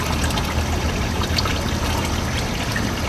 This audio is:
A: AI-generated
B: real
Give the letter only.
B